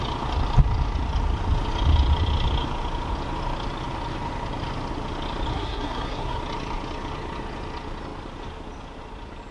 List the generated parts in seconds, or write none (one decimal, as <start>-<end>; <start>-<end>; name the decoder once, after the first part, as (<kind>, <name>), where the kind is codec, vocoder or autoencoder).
5.5-6.4 (codec, SNAC)